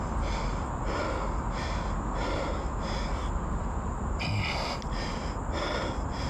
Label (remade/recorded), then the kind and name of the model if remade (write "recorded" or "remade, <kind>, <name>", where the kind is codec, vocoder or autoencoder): recorded